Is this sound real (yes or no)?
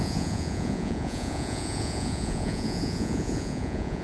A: no